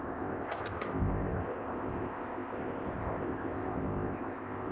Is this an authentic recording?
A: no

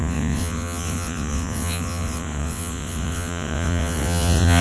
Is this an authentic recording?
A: no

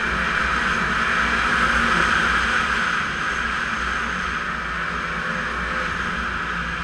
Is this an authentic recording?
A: yes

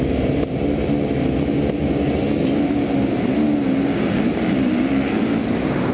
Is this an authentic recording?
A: yes